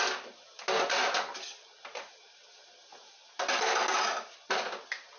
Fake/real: real